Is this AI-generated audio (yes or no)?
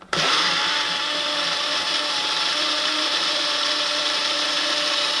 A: yes